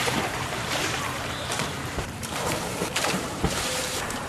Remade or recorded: remade